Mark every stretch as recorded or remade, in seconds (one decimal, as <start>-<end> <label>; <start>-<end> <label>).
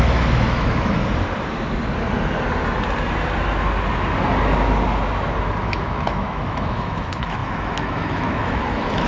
0.0-1.0 remade; 1.0-5.6 recorded; 5.6-9.1 remade